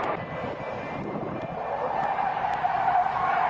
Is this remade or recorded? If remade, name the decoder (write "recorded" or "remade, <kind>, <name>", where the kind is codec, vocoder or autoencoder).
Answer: remade, vocoder, BigVGAN v2